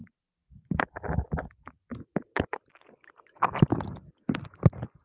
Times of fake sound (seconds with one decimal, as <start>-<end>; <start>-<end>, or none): 0.0-1.9